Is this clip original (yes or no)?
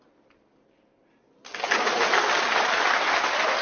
yes